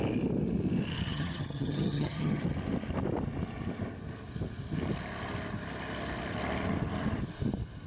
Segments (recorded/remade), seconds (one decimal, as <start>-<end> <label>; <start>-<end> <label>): 0.0-1.1 recorded; 1.1-2.4 remade; 2.4-7.9 recorded